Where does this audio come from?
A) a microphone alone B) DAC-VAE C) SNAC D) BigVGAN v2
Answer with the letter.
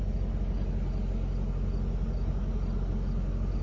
A